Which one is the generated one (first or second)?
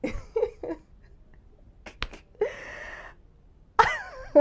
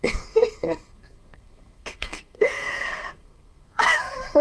second